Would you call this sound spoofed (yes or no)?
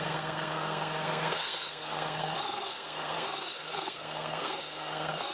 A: yes